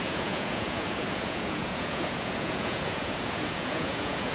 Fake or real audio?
fake